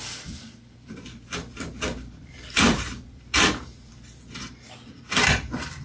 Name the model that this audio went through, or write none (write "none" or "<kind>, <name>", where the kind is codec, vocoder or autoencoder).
vocoder, BigVGAN v2